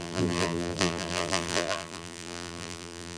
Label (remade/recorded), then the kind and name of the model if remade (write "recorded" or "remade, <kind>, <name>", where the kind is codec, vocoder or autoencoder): remade, vocoder, BigVGAN v2